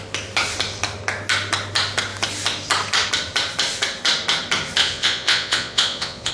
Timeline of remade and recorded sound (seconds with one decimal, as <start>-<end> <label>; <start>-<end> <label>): 0.0-4.8 recorded; 4.8-6.3 remade

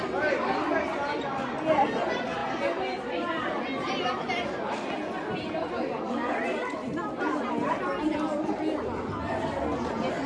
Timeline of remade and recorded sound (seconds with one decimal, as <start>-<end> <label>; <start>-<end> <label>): 0.0-10.3 recorded

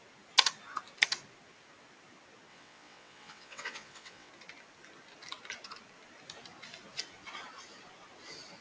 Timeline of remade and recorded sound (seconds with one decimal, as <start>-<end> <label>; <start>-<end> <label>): 0.0-2.5 recorded; 2.5-4.3 remade; 4.3-8.6 recorded

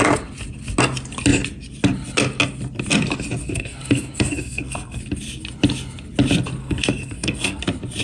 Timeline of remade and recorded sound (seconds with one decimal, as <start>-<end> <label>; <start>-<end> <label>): 0.0-3.4 recorded; 3.4-5.0 remade; 5.0-6.6 recorded; 6.6-7.6 remade; 7.6-8.0 recorded

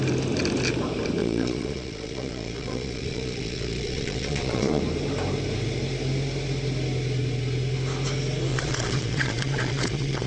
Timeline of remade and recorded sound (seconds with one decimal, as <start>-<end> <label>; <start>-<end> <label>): 0.0-1.2 recorded; 1.2-4.8 remade; 4.8-8.5 recorded; 8.5-10.3 remade

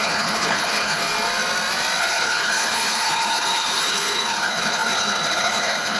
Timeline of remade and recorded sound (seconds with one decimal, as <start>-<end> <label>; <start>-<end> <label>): 0.0-1.0 remade; 1.0-2.0 recorded; 2.0-6.0 remade

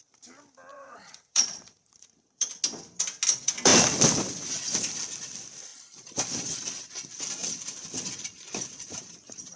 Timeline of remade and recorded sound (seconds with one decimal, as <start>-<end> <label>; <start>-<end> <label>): 0.0-0.7 recorded; 0.7-2.5 remade; 2.5-9.6 recorded

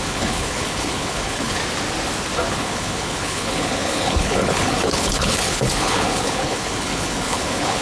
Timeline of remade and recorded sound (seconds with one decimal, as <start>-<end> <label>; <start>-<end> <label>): 0.0-1.6 remade; 1.6-2.5 recorded; 2.5-7.8 remade